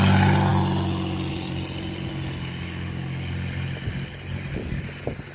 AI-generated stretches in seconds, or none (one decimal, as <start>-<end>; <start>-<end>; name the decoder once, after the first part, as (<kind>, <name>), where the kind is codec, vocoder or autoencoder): none